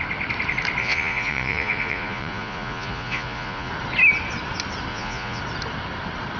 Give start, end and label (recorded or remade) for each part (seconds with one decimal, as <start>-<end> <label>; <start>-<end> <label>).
0.0-0.8 recorded; 0.8-3.7 remade; 3.7-4.9 recorded; 4.9-5.4 remade; 5.4-6.4 recorded